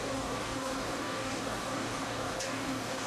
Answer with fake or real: fake